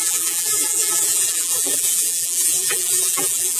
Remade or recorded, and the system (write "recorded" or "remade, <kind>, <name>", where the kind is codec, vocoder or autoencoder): remade, vocoder, BigVGAN v2